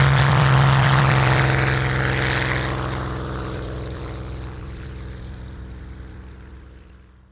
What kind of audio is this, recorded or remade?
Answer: remade